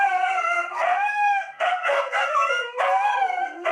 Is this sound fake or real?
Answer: fake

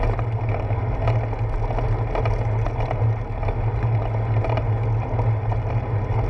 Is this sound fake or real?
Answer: real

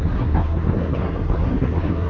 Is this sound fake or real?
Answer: fake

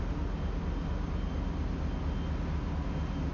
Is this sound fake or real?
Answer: real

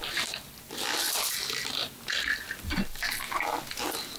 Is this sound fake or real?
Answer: real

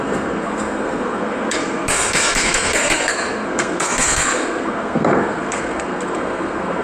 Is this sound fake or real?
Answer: fake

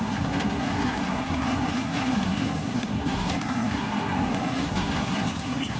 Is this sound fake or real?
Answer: fake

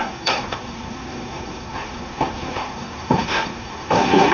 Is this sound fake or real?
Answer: fake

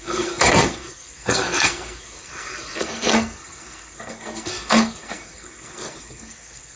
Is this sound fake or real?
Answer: fake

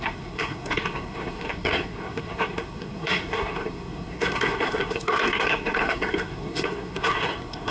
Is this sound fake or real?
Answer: fake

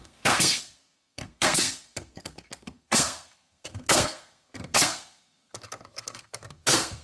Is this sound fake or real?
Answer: fake